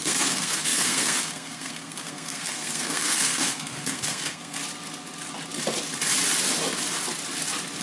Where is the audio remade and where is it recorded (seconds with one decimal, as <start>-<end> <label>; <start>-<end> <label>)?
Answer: 0.0-4.6 remade; 4.6-7.8 recorded